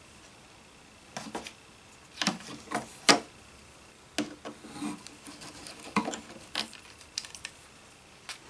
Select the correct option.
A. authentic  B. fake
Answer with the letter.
A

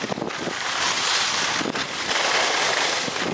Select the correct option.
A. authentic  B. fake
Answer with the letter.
A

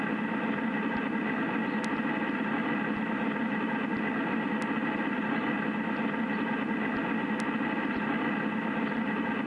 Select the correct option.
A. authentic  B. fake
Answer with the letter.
A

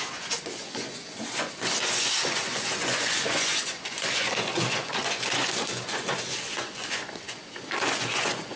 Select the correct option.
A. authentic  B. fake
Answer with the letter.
B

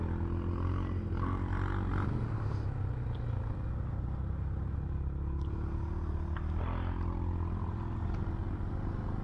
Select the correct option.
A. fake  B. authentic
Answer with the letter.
B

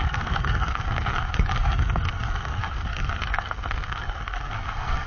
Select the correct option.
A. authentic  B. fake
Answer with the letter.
B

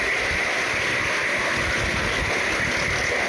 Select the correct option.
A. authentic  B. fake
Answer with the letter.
A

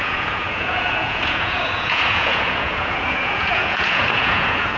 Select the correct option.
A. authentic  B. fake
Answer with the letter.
B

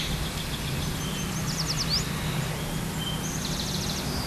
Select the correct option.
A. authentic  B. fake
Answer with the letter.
A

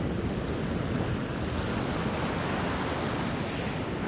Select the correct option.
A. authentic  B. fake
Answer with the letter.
A